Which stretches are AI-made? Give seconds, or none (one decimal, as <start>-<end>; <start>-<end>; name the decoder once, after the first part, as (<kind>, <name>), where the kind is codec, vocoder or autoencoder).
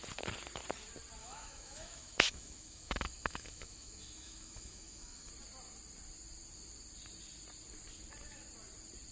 1.2-5.3 (autoencoder, DAC-VAE)